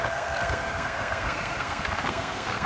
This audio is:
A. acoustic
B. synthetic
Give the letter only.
B